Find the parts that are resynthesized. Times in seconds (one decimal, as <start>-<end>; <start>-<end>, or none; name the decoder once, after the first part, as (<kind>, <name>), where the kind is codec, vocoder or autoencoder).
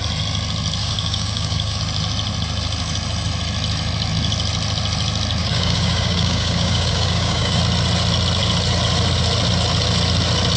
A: 0.8-1.8 (codec, DAC); 5.4-7.6